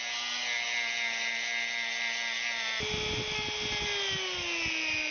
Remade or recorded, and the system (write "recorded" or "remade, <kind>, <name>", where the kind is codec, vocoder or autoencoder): recorded